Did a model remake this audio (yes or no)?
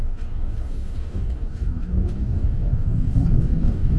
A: yes